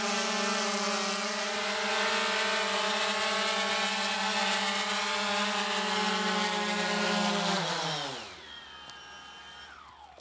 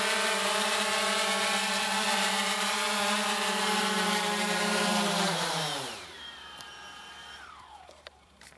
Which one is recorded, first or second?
first